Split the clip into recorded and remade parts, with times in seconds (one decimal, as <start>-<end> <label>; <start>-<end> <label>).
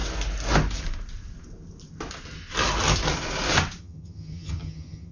0.0-3.8 recorded; 3.8-5.1 remade